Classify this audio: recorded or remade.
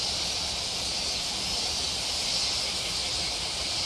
recorded